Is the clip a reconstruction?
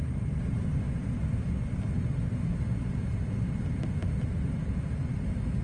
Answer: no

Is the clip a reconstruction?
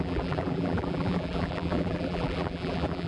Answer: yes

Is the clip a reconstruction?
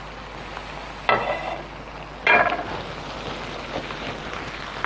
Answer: no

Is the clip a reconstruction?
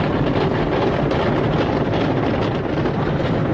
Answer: no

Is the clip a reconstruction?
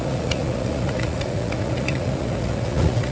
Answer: yes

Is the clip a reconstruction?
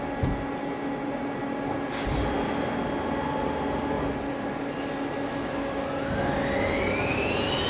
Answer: no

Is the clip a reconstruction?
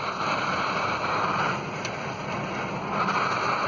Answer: no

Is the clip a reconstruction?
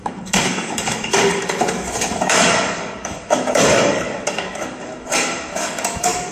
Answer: yes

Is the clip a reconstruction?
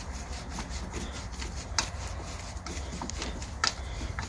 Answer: no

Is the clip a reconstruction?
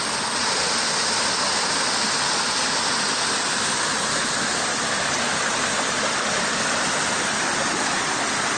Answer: no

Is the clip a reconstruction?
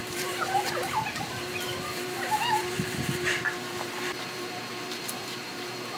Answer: yes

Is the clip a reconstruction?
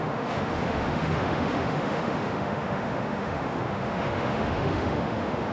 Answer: yes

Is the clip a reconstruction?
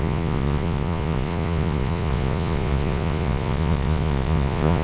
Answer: yes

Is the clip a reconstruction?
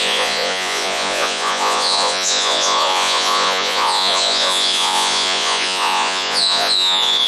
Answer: yes